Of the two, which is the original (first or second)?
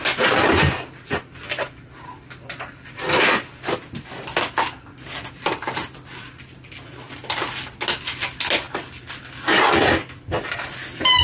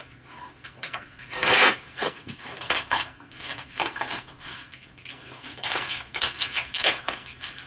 first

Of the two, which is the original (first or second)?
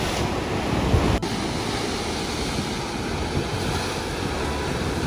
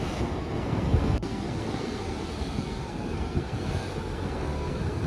first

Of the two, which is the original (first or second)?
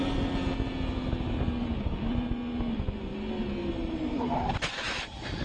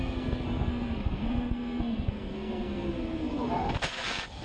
first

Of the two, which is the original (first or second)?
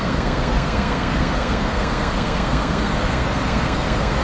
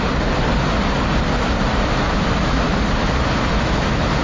second